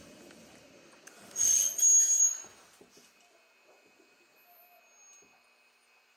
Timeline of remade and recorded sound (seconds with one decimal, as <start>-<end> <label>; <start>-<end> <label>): 0.0-6.2 recorded